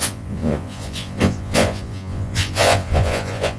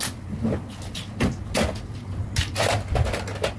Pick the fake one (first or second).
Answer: first